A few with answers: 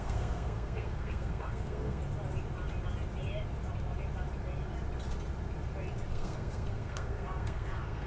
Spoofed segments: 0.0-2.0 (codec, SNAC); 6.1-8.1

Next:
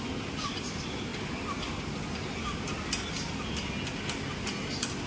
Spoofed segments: none

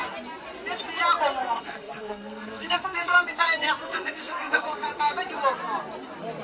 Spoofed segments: 1.4-5.1 (codec, SNAC)

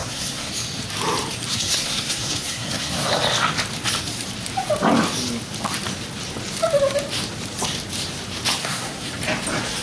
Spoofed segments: 0.0-0.5 (codec, SNAC); 1.5-3.1; 8.6-9.1

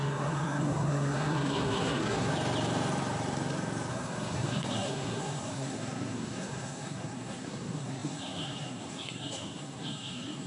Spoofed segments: 0.0-2.3 (codec, SNAC); 3.9-10.5

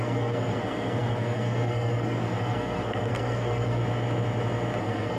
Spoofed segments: 0.0-3.8 (codec, SNAC); 4.8-5.2